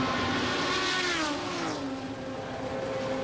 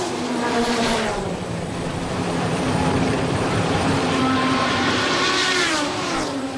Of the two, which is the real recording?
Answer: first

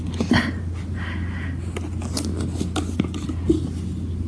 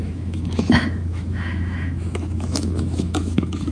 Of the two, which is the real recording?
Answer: first